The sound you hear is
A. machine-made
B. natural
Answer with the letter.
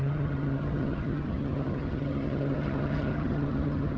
A